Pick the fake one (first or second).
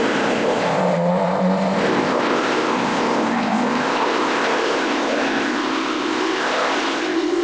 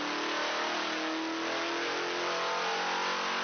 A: first